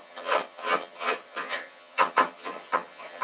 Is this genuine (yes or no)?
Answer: no